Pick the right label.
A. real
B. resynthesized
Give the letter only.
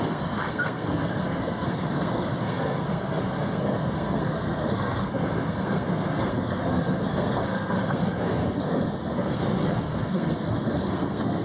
B